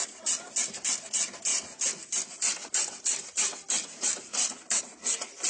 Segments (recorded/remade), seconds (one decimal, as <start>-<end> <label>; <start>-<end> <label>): 0.0-0.6 remade; 0.6-1.5 recorded; 1.5-4.8 remade; 4.8-5.5 recorded